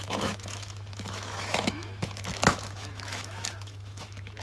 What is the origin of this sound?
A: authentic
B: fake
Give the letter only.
B